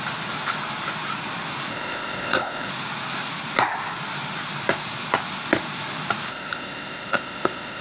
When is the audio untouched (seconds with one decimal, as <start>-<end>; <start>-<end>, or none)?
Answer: 0.0-1.7; 2.7-6.3